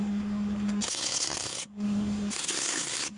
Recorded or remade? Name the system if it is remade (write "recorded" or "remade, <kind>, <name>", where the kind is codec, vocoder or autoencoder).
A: remade, codec, SNAC